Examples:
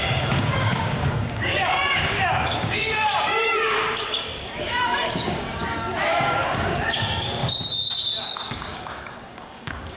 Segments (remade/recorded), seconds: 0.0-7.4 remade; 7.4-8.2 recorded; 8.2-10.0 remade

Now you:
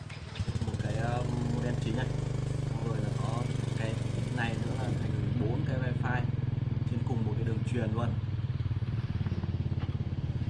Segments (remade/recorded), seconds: 0.0-10.5 recorded

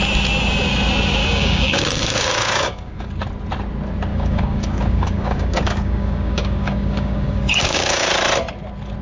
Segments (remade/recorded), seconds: 0.0-1.2 recorded; 1.2-3.1 remade; 3.1-4.1 recorded; 4.1-8.1 remade; 8.1-9.0 recorded